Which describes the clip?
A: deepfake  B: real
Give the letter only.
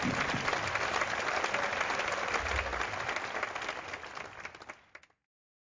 B